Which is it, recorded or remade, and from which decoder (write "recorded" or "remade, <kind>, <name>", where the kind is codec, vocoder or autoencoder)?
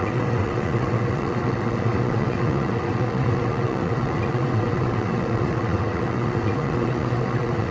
remade, vocoder, WaveNeXt